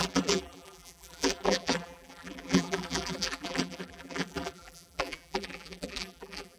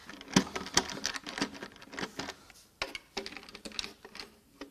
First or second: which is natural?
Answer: second